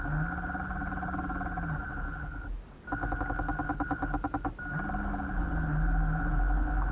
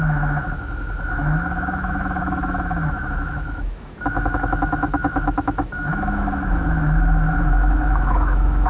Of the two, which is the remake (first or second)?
second